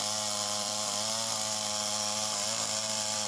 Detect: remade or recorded remade